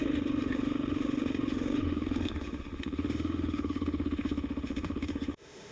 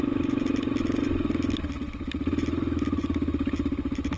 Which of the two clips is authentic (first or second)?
second